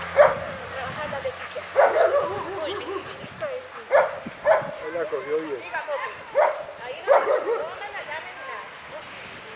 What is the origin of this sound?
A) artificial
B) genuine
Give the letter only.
B